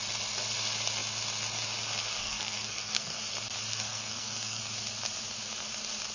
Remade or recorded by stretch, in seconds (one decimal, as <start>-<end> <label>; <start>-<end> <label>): 0.0-2.2 recorded; 2.2-3.2 remade; 3.2-3.7 recorded; 3.7-4.6 remade; 4.6-6.1 recorded